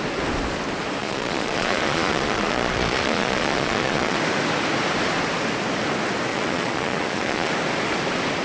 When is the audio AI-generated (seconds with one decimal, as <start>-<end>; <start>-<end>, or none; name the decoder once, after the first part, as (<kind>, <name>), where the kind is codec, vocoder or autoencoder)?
1.0-4.2 (vocoder, Vocos); 6.3-7.5